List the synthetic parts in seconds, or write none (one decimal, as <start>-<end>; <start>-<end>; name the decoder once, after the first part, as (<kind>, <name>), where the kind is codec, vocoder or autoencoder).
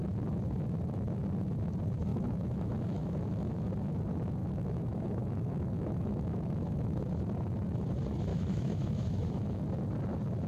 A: 2.1-3.7 (autoencoder, DAC-VAE); 4.4-7.1; 8.3-9.6